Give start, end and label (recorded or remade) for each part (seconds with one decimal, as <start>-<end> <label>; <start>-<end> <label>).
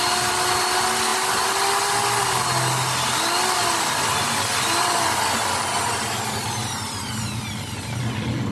0.0-8.5 recorded